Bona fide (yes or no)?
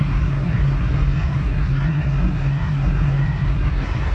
no